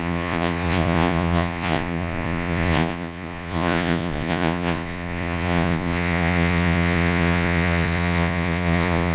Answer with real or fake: fake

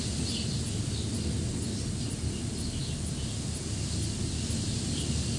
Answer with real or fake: real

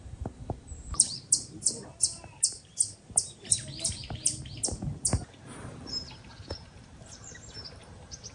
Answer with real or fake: fake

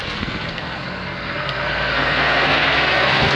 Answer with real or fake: fake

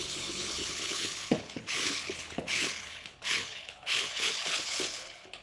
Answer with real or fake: fake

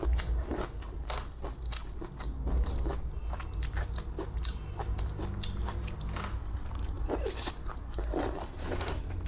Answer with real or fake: real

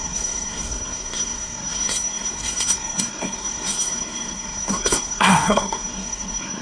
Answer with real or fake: fake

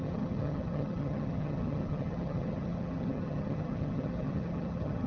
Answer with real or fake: fake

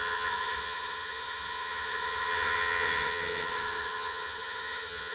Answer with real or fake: fake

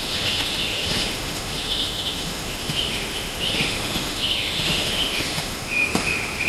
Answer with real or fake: fake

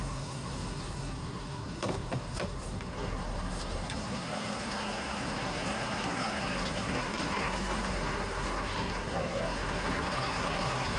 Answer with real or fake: fake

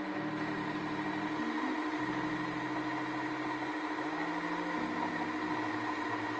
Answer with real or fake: real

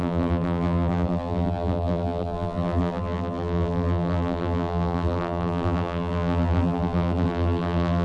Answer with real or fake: fake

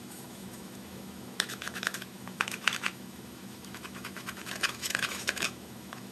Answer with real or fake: fake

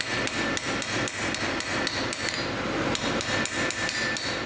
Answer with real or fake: real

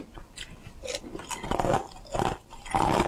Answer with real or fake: real